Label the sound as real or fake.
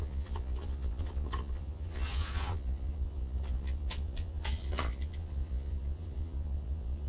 fake